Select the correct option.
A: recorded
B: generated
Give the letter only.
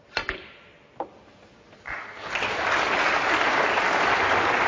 A